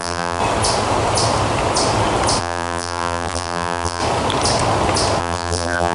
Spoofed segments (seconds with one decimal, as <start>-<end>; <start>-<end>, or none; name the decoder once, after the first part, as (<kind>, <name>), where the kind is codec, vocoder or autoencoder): 0.0-0.4 (vocoder, BigVGAN v2); 2.4-4.0; 5.2-5.9